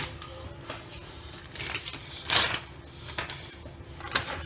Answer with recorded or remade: recorded